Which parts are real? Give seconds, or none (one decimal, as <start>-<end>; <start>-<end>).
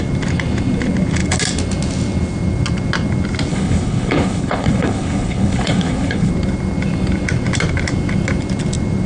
0.0-3.5; 6.3-9.1